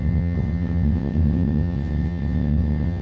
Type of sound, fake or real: fake